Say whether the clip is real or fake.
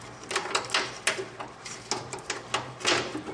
real